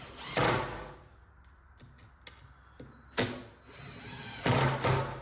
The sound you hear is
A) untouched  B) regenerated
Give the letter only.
A